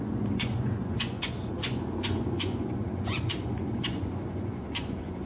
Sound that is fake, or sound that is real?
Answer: fake